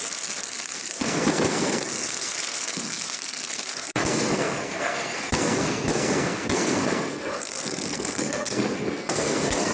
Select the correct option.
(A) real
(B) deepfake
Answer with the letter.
B